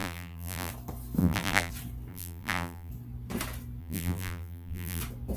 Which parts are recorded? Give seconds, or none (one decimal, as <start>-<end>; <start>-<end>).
0.7-1.2; 1.7-2.1; 2.9-3.8; 5.0-5.4